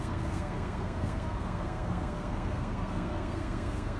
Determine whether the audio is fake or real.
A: fake